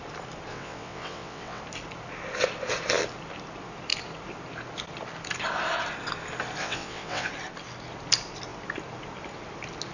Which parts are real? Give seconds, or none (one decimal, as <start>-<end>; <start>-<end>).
0.0-0.5; 1.6-6.6; 7.3-9.9